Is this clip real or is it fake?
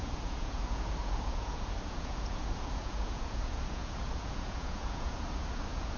fake